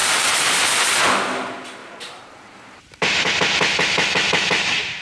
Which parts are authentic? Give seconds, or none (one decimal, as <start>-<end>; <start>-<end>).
0.6-1.8; 3.3-5.0